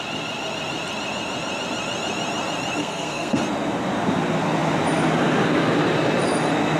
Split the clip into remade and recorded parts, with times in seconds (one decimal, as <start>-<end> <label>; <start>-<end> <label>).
0.0-2.8 recorded; 2.8-3.4 remade; 3.4-6.8 recorded